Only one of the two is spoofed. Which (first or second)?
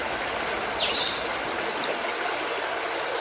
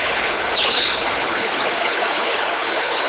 second